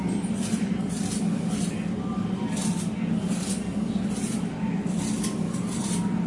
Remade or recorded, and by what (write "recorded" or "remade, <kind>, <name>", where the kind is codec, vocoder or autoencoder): recorded